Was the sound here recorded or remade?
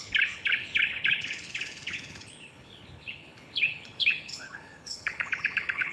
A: remade